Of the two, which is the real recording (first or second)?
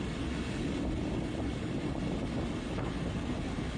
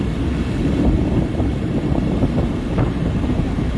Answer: first